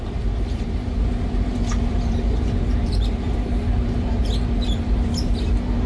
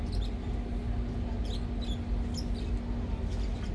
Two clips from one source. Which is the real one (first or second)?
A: second